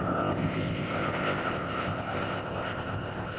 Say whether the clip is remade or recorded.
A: remade